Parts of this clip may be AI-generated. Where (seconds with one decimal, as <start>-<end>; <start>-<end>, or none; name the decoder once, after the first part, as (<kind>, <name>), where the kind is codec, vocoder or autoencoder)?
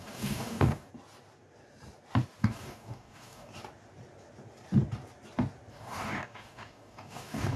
0.0-0.9 (codec, DAC); 2.4-3.5; 5.7-7.6